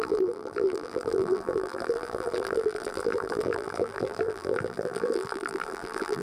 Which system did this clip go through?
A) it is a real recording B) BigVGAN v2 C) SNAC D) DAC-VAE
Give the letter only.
B